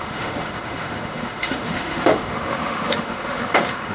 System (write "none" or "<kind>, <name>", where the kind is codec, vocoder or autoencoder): autoencoder, DAC-VAE